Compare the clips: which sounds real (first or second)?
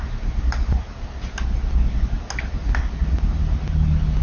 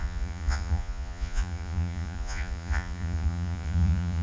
first